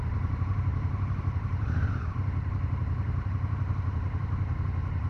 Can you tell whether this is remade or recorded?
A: remade